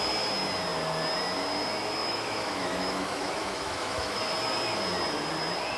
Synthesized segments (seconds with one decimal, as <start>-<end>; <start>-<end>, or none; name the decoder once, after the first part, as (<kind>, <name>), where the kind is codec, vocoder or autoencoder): 2.0-4.2 (autoencoder, DAC-VAE)